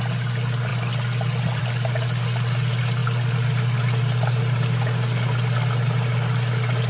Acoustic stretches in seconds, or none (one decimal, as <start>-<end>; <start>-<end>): 0.0-6.9